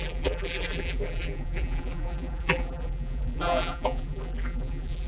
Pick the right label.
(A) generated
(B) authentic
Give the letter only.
A